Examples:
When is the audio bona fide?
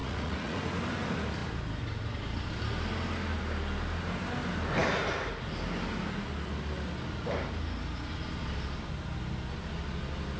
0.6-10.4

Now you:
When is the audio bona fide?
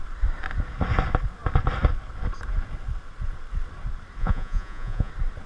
0.0-4.2; 5.1-5.5